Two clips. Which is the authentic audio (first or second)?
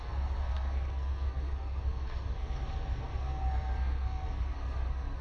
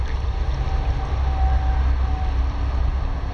second